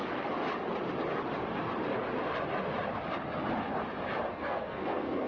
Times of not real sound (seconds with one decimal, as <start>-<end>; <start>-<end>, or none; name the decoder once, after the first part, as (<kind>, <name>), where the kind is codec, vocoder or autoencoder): 4.3-5.3 (codec, SNAC)